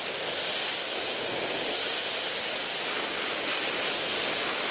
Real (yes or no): yes